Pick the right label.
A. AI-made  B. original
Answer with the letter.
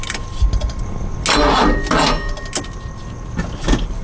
B